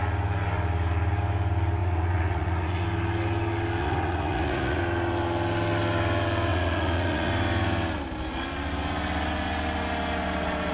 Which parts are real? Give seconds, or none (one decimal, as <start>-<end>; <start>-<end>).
0.0-1.8; 2.8-3.8; 4.8-6.5; 7.3-10.7